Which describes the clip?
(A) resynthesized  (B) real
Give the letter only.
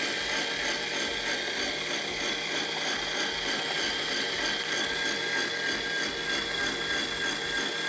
B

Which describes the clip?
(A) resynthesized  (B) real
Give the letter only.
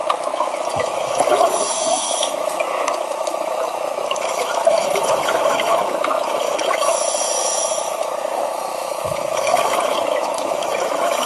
A